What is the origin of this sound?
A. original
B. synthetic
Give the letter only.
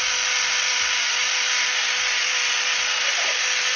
A